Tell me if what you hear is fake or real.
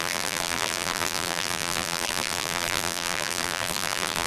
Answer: fake